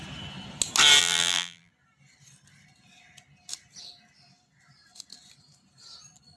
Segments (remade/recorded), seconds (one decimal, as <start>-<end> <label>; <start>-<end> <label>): 0.0-1.0 recorded; 1.0-1.7 remade; 1.7-6.4 recorded